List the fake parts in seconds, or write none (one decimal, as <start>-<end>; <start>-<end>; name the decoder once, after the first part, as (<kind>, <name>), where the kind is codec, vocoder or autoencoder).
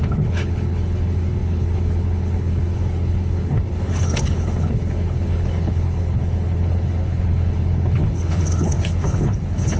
0.0-9.8 (codec, HILCodec)